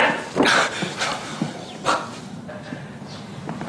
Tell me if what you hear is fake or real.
real